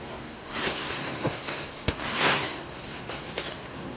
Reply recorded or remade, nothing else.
remade